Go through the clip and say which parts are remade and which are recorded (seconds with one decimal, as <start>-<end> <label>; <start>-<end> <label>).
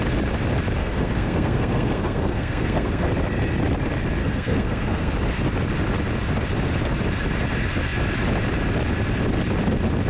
0.0-0.8 recorded; 0.8-3.1 remade; 3.1-4.2 recorded; 4.2-5.1 remade; 5.1-10.1 recorded